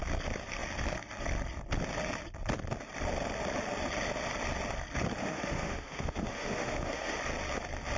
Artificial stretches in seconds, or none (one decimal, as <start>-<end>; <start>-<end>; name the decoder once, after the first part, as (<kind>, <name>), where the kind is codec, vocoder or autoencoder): 5.2-7.2 (autoencoder, DAC-VAE)